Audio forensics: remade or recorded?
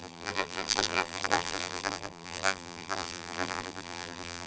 remade